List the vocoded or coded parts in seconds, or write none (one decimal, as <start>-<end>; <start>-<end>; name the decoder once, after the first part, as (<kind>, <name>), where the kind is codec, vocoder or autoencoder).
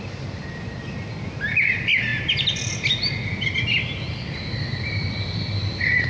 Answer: none